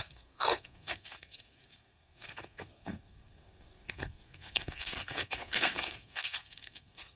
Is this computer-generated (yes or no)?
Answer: yes